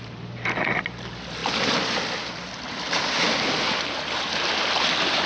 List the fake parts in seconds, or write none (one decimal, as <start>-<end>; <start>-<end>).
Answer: none